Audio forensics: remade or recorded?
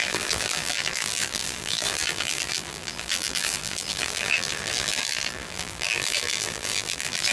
remade